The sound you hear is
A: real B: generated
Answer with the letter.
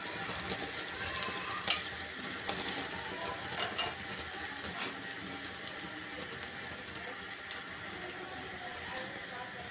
A